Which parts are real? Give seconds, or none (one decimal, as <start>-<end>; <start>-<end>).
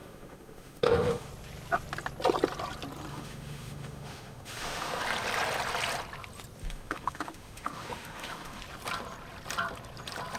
1.3-3.1; 5.0-6.6; 8.6-10.4